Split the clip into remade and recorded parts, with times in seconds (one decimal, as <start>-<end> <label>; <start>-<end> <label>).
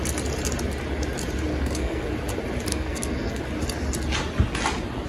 0.0-1.5 recorded; 1.5-2.1 remade; 2.1-2.7 recorded; 2.7-3.4 remade; 3.4-5.1 recorded